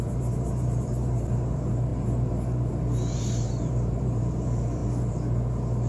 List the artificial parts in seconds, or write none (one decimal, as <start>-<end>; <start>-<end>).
0.0-4.8